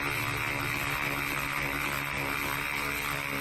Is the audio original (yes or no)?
yes